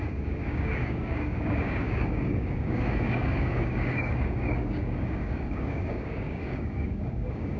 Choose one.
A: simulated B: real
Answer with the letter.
A